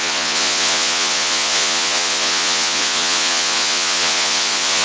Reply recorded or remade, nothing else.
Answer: remade